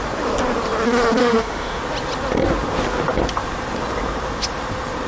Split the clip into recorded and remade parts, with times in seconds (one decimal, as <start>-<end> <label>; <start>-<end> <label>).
0.0-1.2 recorded; 1.2-1.8 remade; 1.8-5.1 recorded